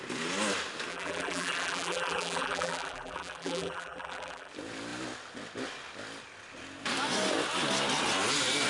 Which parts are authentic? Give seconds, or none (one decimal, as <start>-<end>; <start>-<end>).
0.0-0.9; 4.5-8.7

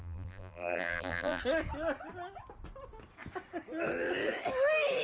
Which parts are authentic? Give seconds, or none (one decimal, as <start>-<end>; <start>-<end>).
1.4-5.0

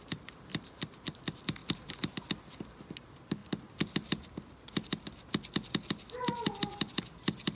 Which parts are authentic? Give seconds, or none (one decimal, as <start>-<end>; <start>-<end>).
0.0-0.5; 1.2-1.6; 2.2-7.6

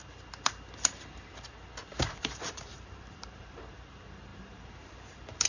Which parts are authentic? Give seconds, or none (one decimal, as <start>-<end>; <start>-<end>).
0.0-1.9; 3.6-4.3